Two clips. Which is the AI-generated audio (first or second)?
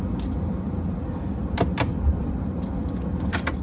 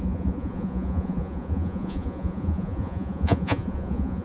second